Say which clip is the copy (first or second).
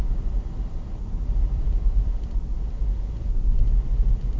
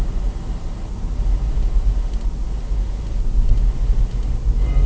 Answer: first